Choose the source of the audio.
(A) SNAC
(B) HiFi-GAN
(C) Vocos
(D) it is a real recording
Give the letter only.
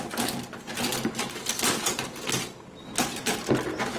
D